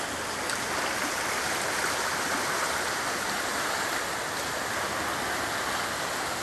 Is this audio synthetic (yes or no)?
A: no